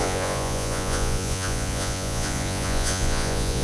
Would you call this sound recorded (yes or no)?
no